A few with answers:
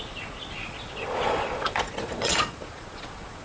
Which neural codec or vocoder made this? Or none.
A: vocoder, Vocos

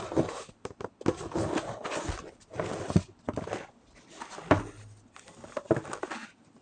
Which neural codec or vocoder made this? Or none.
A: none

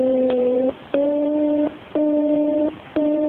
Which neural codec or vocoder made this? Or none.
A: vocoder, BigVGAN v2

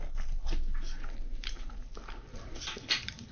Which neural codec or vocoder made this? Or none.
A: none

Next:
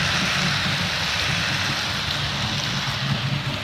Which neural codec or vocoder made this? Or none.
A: none